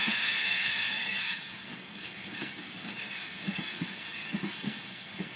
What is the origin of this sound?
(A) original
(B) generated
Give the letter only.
B